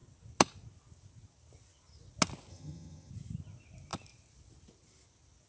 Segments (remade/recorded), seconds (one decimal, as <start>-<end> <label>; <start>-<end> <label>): 0.0-2.5 recorded; 2.5-3.1 remade; 3.1-5.5 recorded